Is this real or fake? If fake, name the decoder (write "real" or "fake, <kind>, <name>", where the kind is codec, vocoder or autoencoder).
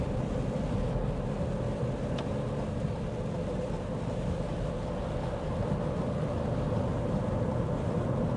real